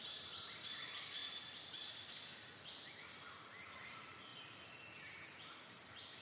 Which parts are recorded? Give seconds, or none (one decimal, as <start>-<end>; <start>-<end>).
1.2-2.6